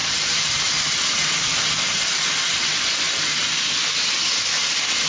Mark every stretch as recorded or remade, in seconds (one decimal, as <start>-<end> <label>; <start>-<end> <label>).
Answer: 0.0-1.7 remade; 1.7-5.1 recorded